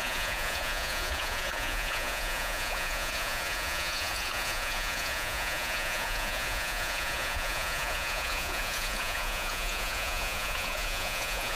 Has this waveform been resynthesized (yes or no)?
yes